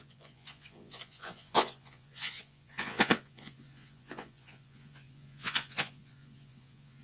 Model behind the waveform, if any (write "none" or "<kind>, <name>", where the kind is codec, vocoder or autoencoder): vocoder, Vocos